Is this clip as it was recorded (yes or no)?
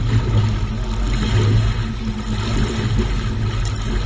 yes